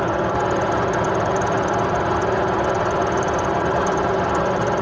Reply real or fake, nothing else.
real